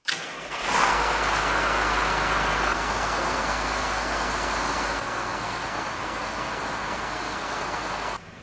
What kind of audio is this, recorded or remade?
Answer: remade